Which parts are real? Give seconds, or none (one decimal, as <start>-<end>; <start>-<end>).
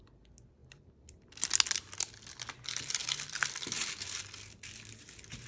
0.0-0.6; 1.5-3.0; 3.8-5.5